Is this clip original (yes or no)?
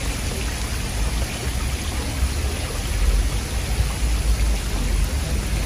yes